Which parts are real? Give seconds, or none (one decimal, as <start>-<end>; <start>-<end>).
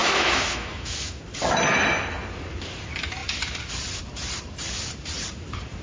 1.2-5.8